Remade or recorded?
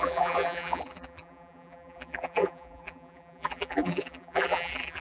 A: remade